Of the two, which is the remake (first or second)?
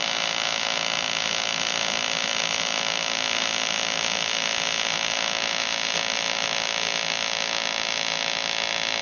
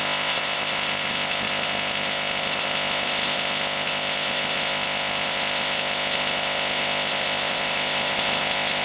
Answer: second